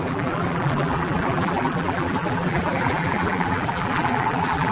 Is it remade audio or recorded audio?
remade